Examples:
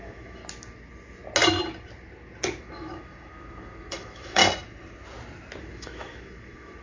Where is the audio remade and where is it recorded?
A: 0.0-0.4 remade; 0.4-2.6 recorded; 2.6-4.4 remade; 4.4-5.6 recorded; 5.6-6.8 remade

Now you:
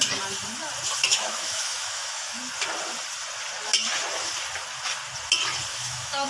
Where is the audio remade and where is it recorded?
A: 0.0-1.1 recorded; 1.1-2.4 remade; 2.4-5.7 recorded; 5.7-6.3 remade

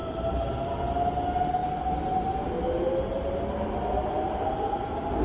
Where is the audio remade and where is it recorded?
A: 0.0-5.2 recorded

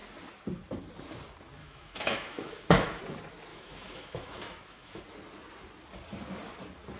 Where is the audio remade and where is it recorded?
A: 0.0-1.6 recorded; 1.6-3.0 remade; 3.0-3.5 recorded; 3.5-5.0 remade; 5.0-7.0 recorded

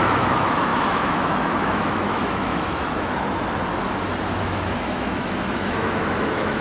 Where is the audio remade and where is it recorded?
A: 0.0-3.6 remade; 3.6-4.4 recorded; 4.4-6.6 remade

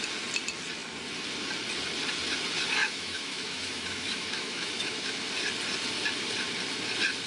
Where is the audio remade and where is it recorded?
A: 0.0-2.8 recorded; 2.8-5.2 remade; 5.2-7.3 recorded

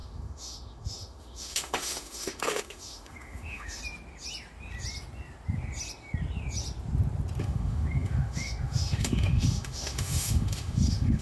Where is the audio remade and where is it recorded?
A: 0.0-3.8 remade; 3.8-7.4 recorded; 7.4-11.2 remade

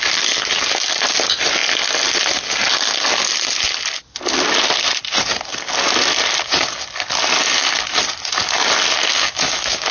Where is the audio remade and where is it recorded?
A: 0.0-9.1 recorded; 9.1-9.9 remade